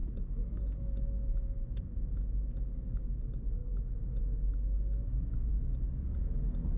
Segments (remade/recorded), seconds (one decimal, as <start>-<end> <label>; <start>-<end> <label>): 0.0-3.2 remade; 3.2-3.6 recorded; 3.6-4.2 remade; 4.2-6.8 recorded

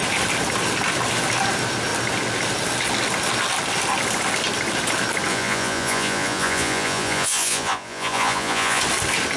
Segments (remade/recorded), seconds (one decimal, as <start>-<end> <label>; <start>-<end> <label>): 0.0-5.3 recorded; 5.3-8.8 remade; 8.8-9.4 recorded

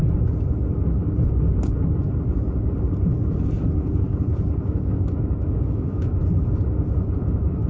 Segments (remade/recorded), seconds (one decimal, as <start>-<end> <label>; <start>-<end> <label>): 0.0-4.6 recorded; 4.6-6.2 remade; 6.2-7.2 recorded; 7.2-7.7 remade

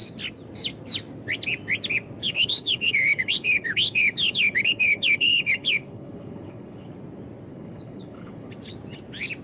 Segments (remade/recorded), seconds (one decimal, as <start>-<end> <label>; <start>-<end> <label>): 0.0-2.2 recorded; 2.2-6.9 remade; 6.9-7.5 recorded; 7.5-8.5 remade; 8.5-9.4 recorded

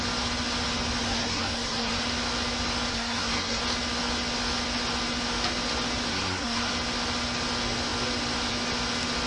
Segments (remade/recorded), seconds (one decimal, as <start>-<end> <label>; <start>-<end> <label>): 0.0-1.0 recorded; 1.0-2.0 remade; 2.0-2.9 recorded; 2.9-3.6 remade; 3.6-6.1 recorded; 6.1-6.7 remade; 6.7-9.3 recorded

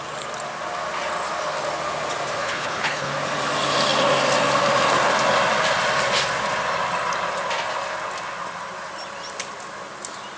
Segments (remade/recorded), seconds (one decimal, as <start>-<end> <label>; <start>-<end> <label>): 0.0-2.4 recorded; 2.4-3.1 remade; 3.1-10.4 recorded